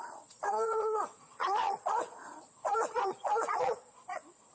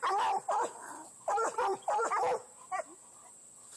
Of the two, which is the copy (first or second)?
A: first